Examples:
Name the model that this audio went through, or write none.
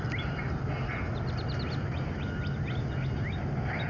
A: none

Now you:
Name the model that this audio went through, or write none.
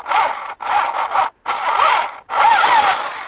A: none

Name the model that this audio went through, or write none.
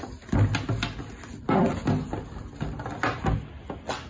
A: none